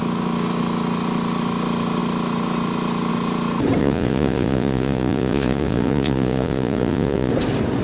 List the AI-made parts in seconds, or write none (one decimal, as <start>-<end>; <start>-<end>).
3.8-7.3